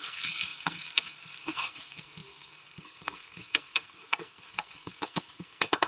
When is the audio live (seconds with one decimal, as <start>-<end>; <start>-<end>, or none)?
none